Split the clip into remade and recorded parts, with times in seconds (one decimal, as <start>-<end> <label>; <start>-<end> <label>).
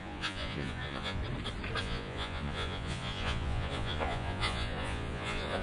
0.0-1.2 remade; 1.2-1.8 recorded; 1.8-5.6 remade